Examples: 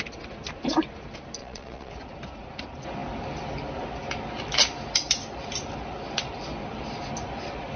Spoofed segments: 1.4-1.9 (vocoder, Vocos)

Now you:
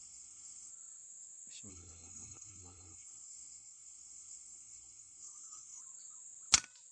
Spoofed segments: 0.0-0.7 (codec, SNAC); 1.7-5.8

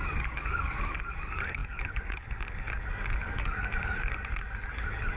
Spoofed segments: 0.0-5.2 (codec, DAC)

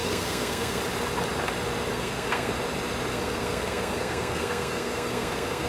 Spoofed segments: 0.0-0.8 (codec, SNAC); 1.9-2.5; 3.1-5.7

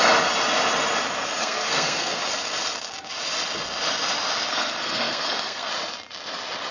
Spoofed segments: 1.4-2.2 (codec, SNAC); 4.5-5.7